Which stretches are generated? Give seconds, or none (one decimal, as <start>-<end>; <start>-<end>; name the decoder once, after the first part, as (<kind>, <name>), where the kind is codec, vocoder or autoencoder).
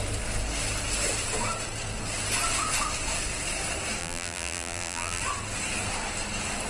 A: 4.0-5.2 (vocoder, BigVGAN v2)